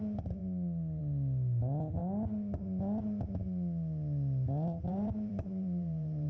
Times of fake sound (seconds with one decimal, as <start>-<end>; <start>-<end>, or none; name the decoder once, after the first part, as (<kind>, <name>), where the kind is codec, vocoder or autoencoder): 4.9-6.3 (vocoder, BigVGAN v2)